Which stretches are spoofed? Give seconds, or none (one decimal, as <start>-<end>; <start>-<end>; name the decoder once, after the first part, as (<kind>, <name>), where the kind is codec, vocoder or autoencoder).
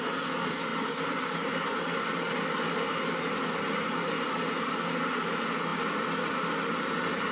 none